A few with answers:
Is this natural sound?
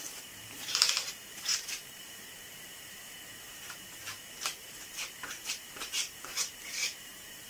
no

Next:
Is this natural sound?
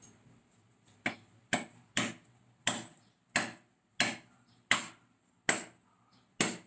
yes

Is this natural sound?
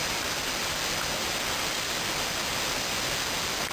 yes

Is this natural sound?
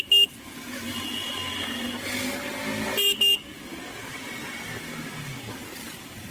yes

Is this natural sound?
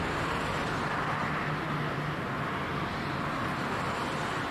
yes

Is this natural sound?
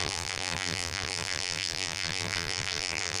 no